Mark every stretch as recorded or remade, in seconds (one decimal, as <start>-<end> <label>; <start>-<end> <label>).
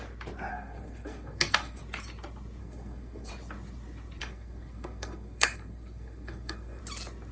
0.0-0.5 recorded; 0.5-1.8 remade; 1.8-2.6 recorded; 2.6-3.3 remade; 3.3-4.2 recorded; 4.2-6.8 remade; 6.8-7.3 recorded